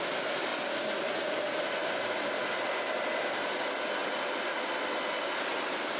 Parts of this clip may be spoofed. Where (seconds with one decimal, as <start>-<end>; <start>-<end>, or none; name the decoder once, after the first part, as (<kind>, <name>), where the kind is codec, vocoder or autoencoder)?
1.8-3.2 (vocoder, BigVGAN v2); 4.0-4.5